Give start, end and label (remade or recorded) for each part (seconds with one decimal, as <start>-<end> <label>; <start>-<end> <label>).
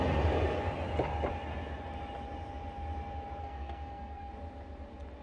0.0-3.4 recorded; 3.4-4.3 remade; 4.3-5.2 recorded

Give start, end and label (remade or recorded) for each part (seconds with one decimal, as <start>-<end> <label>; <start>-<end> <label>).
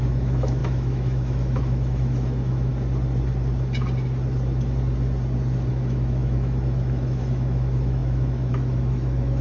0.0-2.7 remade; 2.7-5.7 recorded; 5.7-9.4 remade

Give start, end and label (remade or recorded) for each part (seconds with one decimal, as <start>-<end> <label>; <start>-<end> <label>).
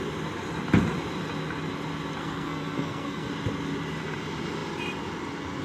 0.0-2.2 recorded; 2.2-3.3 remade; 3.3-5.6 recorded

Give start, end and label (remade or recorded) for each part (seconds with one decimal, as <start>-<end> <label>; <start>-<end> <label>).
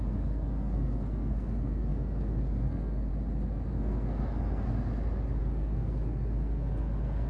0.0-3.1 remade; 3.1-3.7 recorded; 3.7-4.7 remade; 4.7-5.4 recorded; 5.4-7.3 remade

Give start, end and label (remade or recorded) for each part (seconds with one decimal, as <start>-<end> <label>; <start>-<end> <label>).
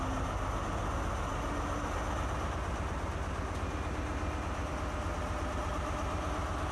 0.0-6.7 recorded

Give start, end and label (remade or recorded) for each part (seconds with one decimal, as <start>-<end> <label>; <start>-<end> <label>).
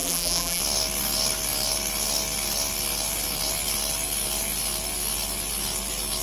0.0-0.6 remade; 0.6-6.2 recorded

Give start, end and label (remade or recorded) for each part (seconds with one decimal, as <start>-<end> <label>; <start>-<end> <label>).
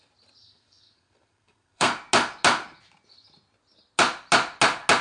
0.0-0.4 recorded; 0.4-1.9 remade; 1.9-5.0 recorded